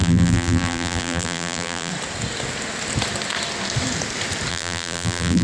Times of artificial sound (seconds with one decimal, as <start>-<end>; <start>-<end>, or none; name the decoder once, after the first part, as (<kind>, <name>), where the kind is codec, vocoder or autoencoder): 0.0-1.9 (vocoder, BigVGAN v2); 4.5-5.4